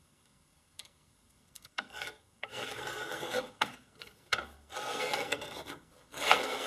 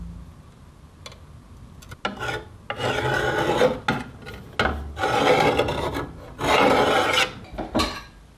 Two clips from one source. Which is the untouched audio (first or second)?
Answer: second